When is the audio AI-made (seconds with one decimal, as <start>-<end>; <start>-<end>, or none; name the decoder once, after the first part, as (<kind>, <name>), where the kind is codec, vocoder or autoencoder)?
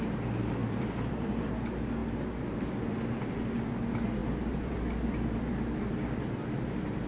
0.6-1.5 (vocoder, BigVGAN v2); 4.2-7.1